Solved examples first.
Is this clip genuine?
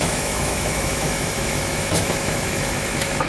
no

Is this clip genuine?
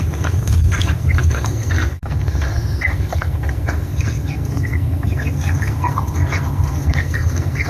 no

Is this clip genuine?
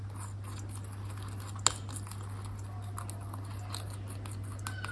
yes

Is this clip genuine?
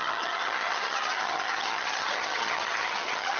no